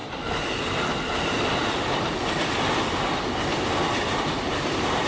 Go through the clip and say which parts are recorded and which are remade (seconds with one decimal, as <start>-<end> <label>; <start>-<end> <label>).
0.0-5.1 recorded